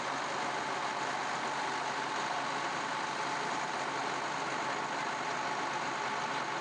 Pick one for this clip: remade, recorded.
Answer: recorded